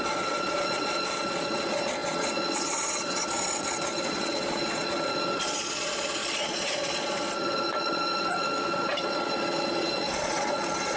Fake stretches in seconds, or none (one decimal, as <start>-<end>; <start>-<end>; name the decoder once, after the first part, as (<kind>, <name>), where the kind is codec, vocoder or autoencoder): 0.0-11.0 (vocoder, Vocos)